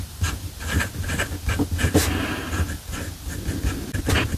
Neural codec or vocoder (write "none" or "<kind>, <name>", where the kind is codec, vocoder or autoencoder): none